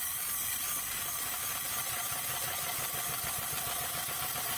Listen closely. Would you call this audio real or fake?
real